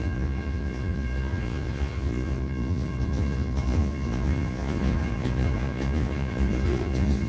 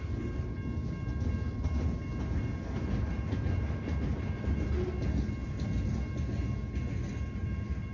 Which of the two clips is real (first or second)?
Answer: second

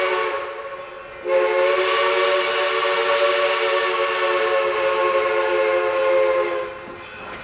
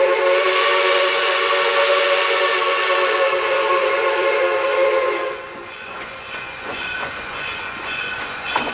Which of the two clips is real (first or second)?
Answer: first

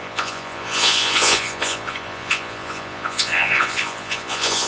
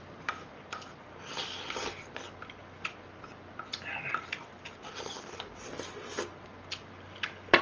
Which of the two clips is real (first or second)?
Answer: second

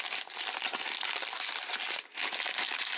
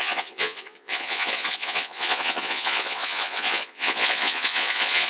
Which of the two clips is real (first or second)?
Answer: first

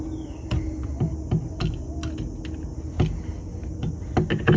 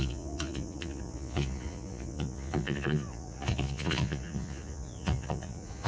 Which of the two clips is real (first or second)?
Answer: first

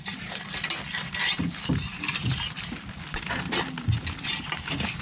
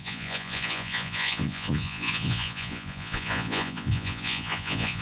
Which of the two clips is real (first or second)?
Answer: first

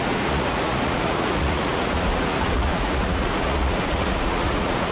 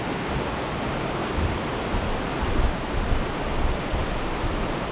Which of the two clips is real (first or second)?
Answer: second